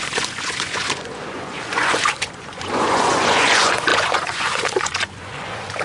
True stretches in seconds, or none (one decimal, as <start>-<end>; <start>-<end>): none